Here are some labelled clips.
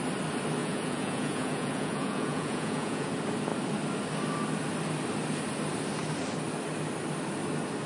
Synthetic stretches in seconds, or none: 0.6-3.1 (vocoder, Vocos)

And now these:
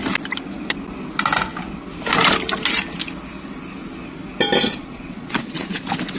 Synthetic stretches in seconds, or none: 4.8-5.8 (vocoder, Vocos)

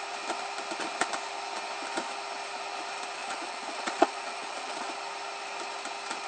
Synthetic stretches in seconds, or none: 3.2-4.9 (vocoder, Vocos)